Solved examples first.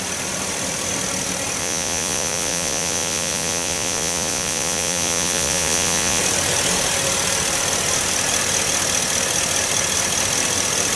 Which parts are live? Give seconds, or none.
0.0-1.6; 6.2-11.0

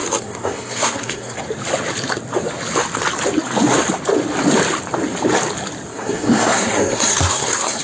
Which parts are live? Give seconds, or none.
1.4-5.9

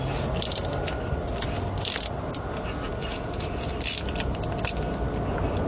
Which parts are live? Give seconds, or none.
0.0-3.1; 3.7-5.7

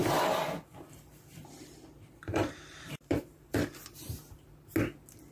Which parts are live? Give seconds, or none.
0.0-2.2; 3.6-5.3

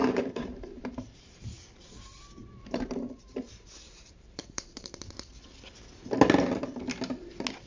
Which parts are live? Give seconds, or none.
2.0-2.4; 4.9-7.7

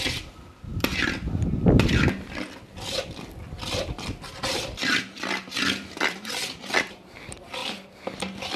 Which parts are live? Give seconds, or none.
7.6-8.2

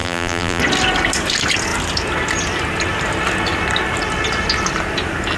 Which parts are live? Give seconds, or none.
0.6-5.4

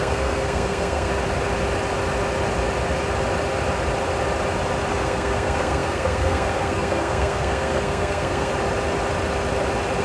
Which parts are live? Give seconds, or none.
1.1-4.9; 8.5-10.0